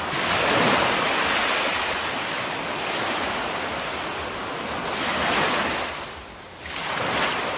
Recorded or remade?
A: recorded